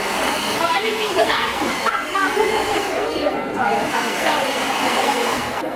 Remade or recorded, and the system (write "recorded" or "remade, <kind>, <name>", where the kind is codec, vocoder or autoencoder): remade, codec, SNAC